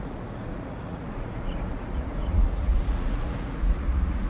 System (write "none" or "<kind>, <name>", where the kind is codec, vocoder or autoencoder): vocoder, Vocos